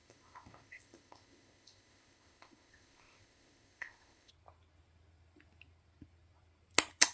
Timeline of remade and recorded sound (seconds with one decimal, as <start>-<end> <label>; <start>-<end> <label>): 0.0-4.3 remade; 4.3-7.1 recorded